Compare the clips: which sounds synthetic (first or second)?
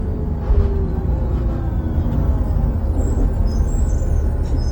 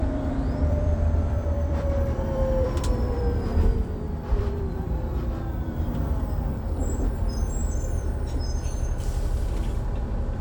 second